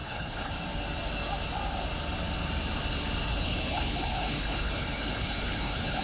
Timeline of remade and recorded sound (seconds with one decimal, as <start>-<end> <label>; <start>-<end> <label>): 0.0-0.5 remade; 0.5-3.3 recorded; 3.3-6.0 remade